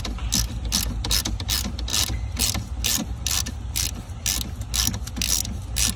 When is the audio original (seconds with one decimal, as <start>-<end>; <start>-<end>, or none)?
0.0-6.0